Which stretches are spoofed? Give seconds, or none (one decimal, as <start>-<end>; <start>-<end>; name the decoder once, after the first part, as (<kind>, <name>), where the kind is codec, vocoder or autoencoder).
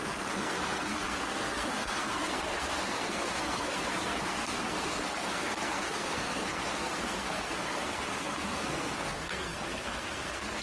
0.0-10.6 (codec, SNAC)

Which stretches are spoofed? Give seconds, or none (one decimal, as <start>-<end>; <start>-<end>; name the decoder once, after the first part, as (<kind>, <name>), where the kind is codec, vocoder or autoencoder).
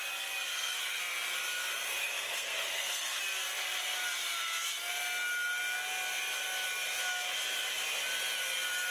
0.5-1.0 (codec, SNAC); 2.0-3.2